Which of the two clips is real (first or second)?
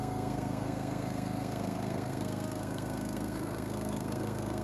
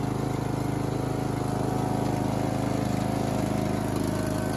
second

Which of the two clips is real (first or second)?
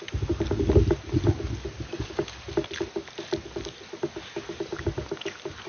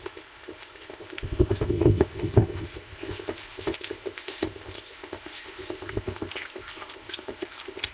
first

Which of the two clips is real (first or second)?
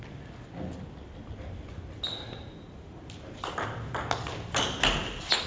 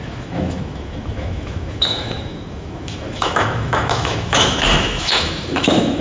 first